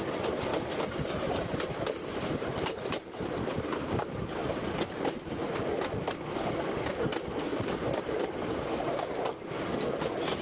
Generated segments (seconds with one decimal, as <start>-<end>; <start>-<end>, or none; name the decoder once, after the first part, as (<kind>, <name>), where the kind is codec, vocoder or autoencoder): 0.5-5.3 (vocoder, BigVGAN v2); 7.5-9.7